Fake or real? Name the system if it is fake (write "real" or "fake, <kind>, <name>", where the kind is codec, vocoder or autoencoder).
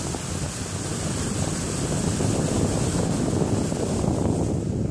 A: real